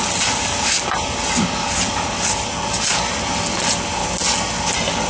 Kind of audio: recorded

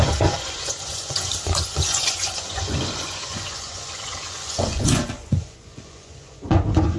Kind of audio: remade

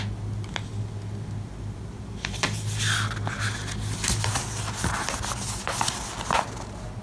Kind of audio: recorded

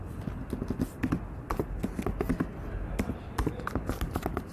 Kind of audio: recorded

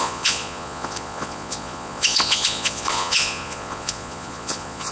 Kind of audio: remade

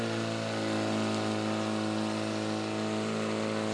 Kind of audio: recorded